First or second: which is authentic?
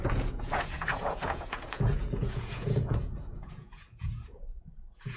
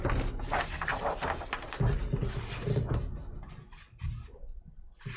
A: second